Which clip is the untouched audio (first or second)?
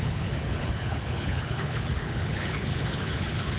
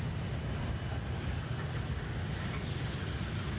second